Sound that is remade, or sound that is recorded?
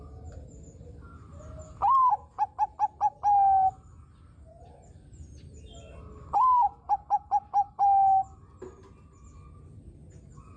recorded